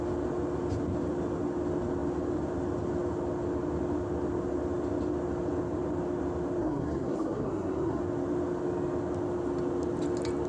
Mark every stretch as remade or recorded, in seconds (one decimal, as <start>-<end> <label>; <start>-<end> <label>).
0.0-6.6 recorded; 6.6-8.0 remade; 8.0-10.5 recorded